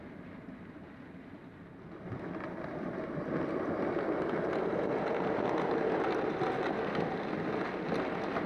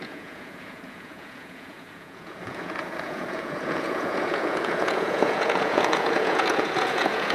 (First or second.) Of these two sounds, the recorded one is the first